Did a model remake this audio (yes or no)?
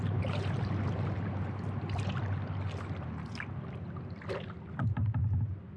no